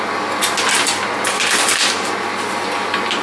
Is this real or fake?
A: real